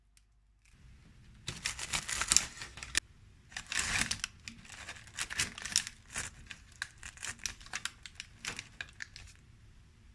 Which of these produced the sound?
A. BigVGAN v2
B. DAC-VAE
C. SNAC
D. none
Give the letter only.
D